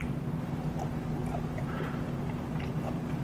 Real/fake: fake